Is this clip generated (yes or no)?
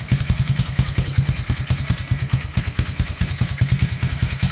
yes